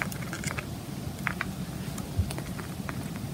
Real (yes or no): yes